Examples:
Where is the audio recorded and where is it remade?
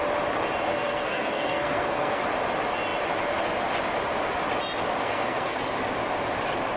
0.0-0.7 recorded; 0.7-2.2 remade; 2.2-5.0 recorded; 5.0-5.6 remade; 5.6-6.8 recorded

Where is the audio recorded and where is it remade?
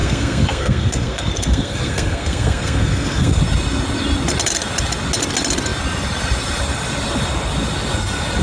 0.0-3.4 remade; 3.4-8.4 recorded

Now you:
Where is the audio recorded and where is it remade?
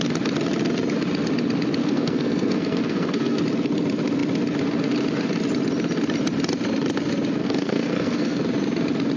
0.0-1.8 recorded; 1.8-3.4 remade; 3.4-7.4 recorded; 7.4-8.4 remade; 8.4-9.2 recorded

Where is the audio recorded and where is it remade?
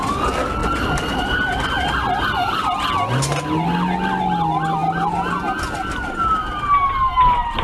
0.0-7.6 recorded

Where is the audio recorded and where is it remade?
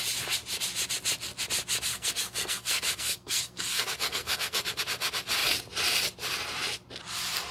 0.0-1.9 recorded; 1.9-4.8 remade; 4.8-7.5 recorded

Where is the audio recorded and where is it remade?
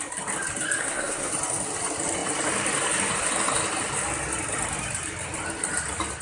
0.0-0.8 recorded; 0.8-1.3 remade; 1.3-6.2 recorded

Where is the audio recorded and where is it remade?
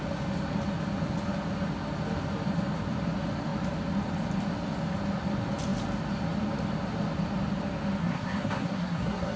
0.0-8.0 recorded; 8.0-9.4 remade